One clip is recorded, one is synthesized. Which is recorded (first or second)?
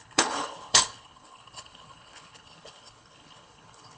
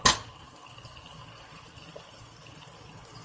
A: second